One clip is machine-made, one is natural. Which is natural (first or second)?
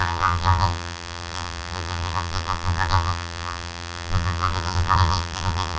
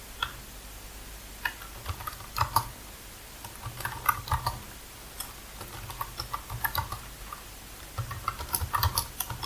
second